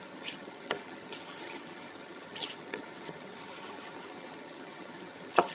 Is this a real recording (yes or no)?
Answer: no